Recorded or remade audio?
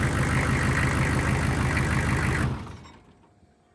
recorded